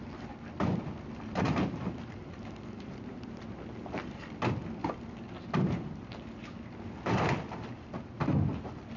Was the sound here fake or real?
real